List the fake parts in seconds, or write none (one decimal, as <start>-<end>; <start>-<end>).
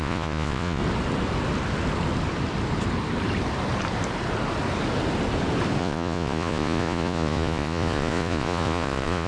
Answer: 0.0-0.8; 5.8-9.3